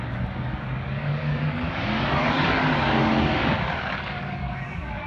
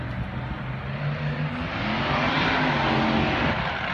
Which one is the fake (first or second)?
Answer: first